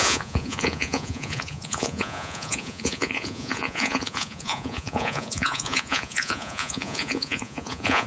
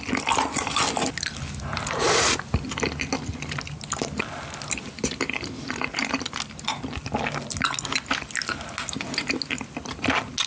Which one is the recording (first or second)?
second